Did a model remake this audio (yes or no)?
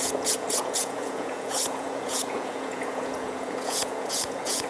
yes